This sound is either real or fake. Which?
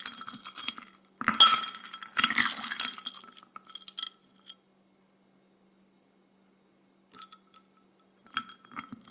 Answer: real